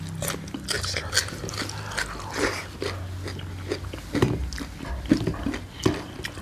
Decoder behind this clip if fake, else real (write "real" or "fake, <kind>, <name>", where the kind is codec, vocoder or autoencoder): real